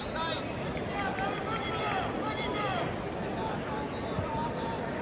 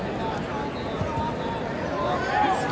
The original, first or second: second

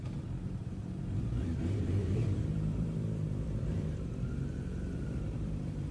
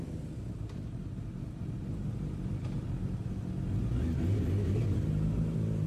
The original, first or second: second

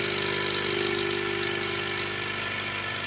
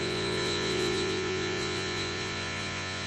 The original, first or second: first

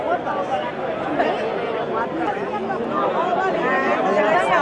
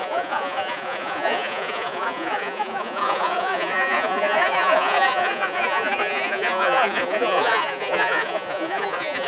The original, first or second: first